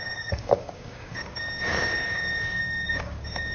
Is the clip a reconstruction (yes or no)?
yes